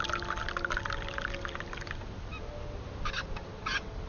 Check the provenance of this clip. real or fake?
real